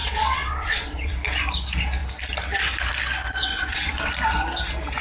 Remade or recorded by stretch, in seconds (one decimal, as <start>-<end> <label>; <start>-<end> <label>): 0.0-1.1 remade; 1.1-3.5 recorded; 3.5-4.1 remade; 4.1-5.0 recorded